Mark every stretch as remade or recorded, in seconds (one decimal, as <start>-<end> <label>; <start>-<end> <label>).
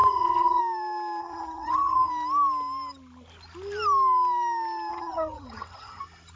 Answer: 0.0-0.6 remade; 0.6-1.2 recorded; 1.2-2.1 remade; 2.1-4.9 recorded; 4.9-6.0 remade; 6.0-6.4 recorded